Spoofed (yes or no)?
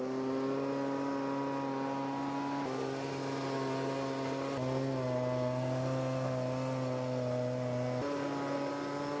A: no